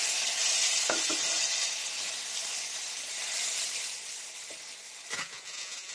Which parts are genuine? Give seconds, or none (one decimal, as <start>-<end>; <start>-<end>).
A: 0.0-5.1